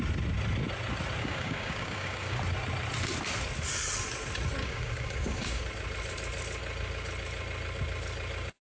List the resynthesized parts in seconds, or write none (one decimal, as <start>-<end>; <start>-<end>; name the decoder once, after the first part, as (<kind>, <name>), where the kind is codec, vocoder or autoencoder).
1.2-2.4 (codec, DAC); 4.6-5.6